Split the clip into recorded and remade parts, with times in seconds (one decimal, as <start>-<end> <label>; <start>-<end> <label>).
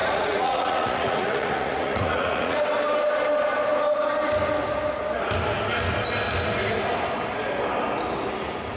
0.0-2.6 remade; 2.6-8.8 recorded